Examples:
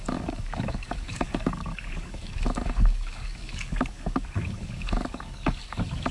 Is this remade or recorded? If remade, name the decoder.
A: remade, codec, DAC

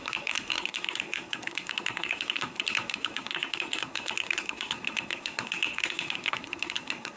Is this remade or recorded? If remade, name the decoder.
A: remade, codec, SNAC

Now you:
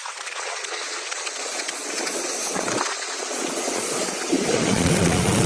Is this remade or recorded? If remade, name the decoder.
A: remade, vocoder, Vocos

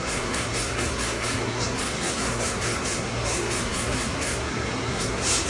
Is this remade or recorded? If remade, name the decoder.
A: remade, codec, SNAC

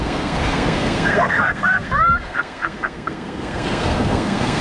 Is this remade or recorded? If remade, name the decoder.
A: remade, codec, SNAC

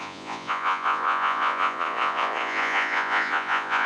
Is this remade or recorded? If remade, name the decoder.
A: remade, vocoder, Vocos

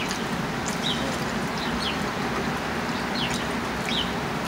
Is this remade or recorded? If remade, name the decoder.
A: recorded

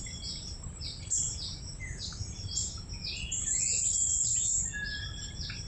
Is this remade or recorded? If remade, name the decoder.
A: remade, vocoder, BigVGAN v2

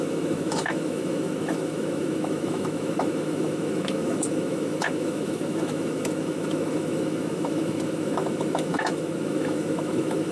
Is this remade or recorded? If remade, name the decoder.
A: remade, autoencoder, DAC-VAE